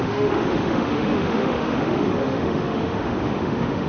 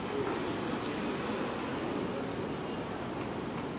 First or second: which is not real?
first